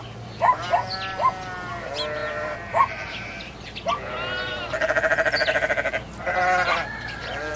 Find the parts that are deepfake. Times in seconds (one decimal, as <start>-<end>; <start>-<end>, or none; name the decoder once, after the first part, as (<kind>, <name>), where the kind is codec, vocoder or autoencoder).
none